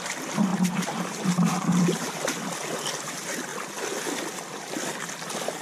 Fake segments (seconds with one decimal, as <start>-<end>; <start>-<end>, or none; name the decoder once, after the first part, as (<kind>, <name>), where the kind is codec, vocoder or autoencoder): 0.5-2.2 (vocoder, BigVGAN v2)